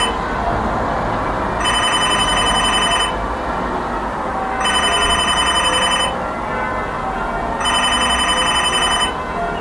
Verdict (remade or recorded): recorded